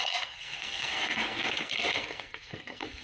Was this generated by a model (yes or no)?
yes